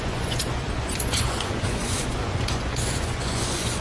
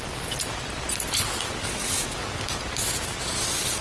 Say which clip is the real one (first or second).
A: second